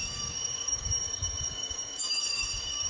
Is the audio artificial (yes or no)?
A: yes